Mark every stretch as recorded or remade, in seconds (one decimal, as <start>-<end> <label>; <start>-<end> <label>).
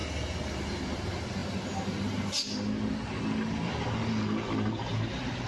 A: 0.0-5.5 recorded